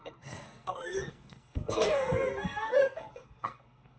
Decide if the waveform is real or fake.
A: fake